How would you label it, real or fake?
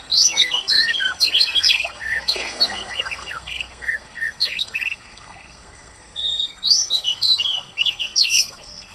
fake